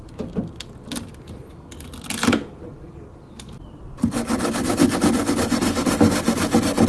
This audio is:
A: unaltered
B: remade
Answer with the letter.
A